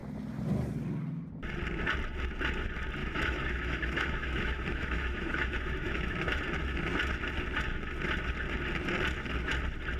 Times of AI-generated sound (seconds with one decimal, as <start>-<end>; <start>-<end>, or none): 3.0-6.4